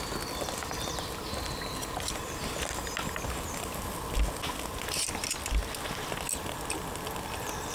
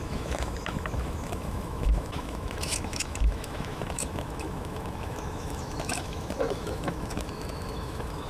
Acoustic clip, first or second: first